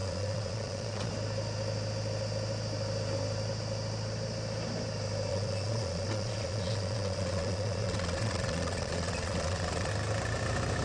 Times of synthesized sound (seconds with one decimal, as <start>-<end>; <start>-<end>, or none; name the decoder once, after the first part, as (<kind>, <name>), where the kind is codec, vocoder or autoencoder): 0.0-1.1 (vocoder, Vocos); 5.3-9.9